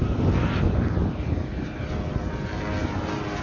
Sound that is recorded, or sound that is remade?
recorded